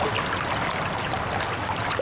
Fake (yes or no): no